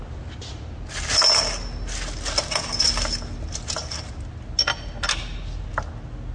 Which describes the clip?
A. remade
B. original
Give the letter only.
B